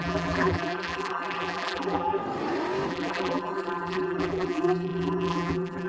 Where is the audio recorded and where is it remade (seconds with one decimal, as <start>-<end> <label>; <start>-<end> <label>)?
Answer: 0.0-2.2 remade; 2.2-2.9 recorded; 2.9-5.9 remade